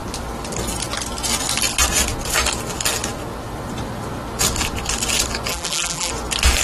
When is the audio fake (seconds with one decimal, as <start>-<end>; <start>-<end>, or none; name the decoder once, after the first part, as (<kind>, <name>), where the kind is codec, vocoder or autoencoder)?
5.5-6.1 (vocoder, BigVGAN v2)